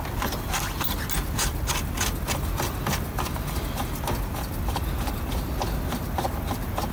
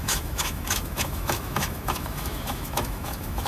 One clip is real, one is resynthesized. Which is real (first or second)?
first